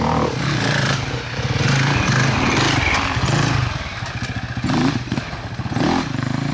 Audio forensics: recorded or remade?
recorded